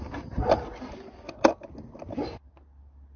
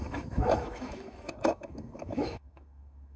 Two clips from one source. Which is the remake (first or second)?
second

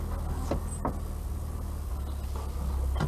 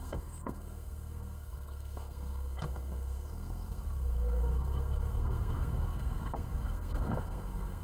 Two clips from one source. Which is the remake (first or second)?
second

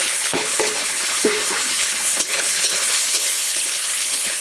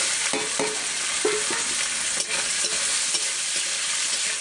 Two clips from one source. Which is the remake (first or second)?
first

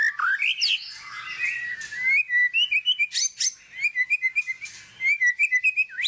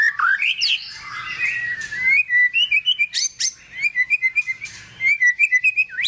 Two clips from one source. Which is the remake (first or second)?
second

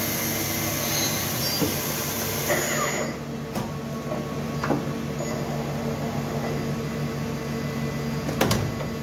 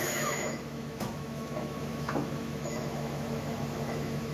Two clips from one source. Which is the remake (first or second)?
second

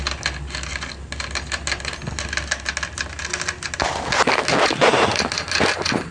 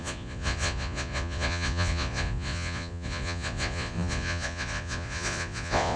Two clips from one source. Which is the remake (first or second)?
second